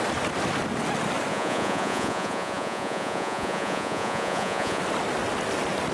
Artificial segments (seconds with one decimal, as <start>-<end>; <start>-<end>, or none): 1.3-4.8

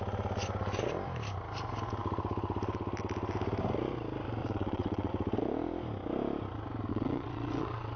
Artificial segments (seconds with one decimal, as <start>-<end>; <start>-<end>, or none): 4.4-5.1; 6.9-8.0

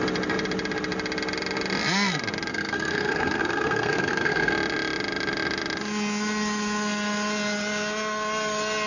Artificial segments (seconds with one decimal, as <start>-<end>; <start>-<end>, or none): 2.5-4.5

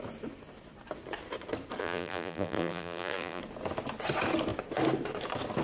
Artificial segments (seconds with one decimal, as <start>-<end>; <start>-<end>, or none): 1.8-3.4